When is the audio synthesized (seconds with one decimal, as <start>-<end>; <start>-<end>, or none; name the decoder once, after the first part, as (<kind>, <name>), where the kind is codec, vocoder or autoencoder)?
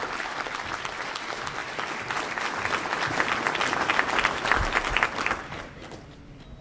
0.0-6.6 (vocoder, BigVGAN v2)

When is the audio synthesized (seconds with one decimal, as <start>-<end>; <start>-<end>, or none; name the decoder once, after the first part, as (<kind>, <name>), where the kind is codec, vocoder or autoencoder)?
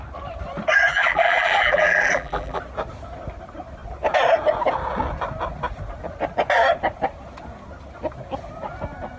0.9-2.6 (vocoder, BigVGAN v2)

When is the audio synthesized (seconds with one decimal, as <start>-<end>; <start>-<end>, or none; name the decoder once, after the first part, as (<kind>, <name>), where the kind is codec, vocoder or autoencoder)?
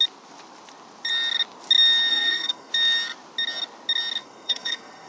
2.1-2.7 (codec, SNAC); 4.2-5.1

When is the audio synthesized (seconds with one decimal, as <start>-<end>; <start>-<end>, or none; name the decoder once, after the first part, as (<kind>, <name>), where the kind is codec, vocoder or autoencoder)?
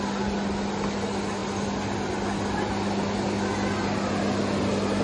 none